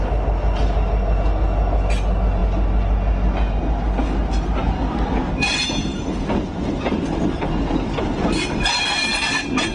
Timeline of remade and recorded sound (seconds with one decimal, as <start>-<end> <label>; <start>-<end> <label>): 0.0-9.7 recorded